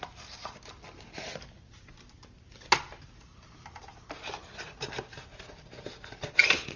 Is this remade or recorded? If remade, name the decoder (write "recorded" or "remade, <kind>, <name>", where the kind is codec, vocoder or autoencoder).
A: recorded